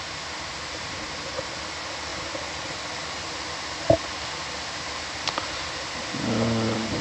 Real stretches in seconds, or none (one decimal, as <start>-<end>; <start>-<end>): 0.0-7.0